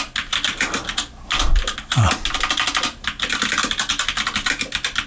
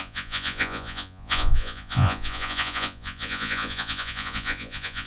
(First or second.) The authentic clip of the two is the first